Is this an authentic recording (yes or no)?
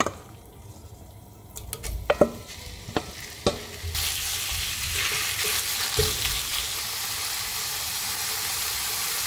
yes